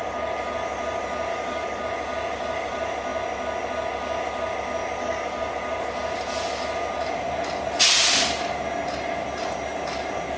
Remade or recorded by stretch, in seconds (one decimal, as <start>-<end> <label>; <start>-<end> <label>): 0.0-1.3 recorded; 1.3-1.8 remade; 1.8-5.0 recorded; 5.0-5.5 remade; 5.5-10.4 recorded